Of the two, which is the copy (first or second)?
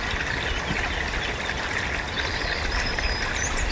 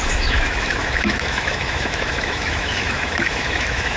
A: second